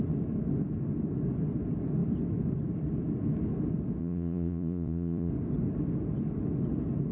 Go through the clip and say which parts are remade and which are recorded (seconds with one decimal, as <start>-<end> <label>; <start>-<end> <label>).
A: 0.0-4.0 recorded; 4.0-5.3 remade; 5.3-7.1 recorded

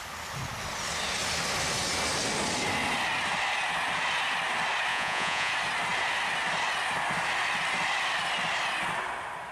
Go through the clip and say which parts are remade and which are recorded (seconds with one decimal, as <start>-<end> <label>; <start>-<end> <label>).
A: 0.0-4.9 recorded; 4.9-5.5 remade; 5.5-9.5 recorded

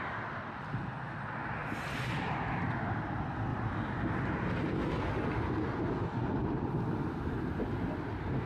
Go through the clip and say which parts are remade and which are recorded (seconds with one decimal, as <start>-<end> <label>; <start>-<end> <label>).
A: 0.0-3.5 recorded; 3.5-4.5 remade; 4.5-8.5 recorded

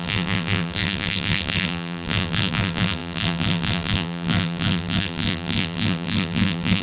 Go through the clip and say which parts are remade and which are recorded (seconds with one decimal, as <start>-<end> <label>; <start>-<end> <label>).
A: 0.0-6.8 remade